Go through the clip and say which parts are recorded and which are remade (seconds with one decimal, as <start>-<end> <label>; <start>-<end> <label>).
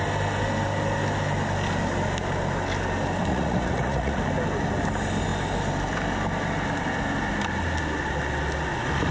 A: 0.0-3.3 recorded; 3.3-4.2 remade; 4.2-9.1 recorded